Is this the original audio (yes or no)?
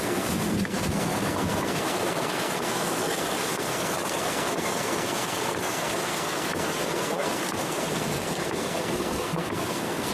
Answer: no